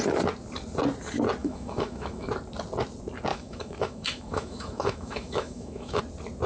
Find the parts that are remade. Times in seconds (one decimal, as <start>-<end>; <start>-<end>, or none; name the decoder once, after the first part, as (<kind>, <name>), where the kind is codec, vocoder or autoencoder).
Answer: 1.4-2.3 (autoencoder, DAC-VAE); 3.3-6.0